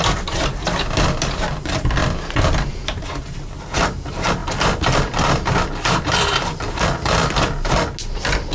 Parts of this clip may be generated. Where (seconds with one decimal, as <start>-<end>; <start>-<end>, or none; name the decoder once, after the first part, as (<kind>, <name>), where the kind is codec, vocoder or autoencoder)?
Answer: none